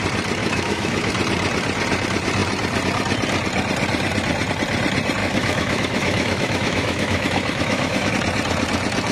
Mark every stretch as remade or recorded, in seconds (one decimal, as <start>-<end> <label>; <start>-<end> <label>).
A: 0.0-0.4 recorded; 0.4-1.1 remade; 1.1-5.2 recorded; 5.2-8.1 remade; 8.1-9.1 recorded